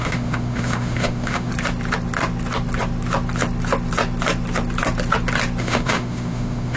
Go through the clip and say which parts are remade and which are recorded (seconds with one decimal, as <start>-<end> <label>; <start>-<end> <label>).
0.0-1.5 remade; 1.5-5.6 recorded; 5.6-6.8 remade

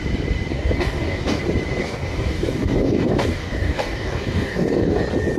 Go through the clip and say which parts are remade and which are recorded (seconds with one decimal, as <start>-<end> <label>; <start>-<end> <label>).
0.0-0.5 recorded; 0.5-1.4 remade; 1.4-1.8 recorded; 1.8-5.0 remade; 5.0-5.4 recorded